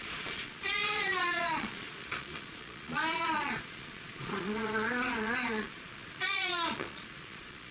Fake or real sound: fake